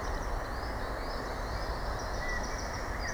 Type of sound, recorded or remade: recorded